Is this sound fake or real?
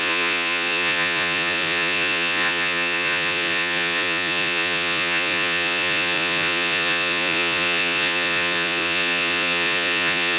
fake